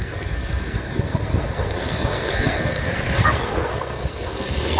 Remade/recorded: remade